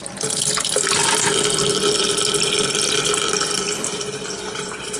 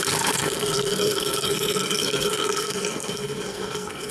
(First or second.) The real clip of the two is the first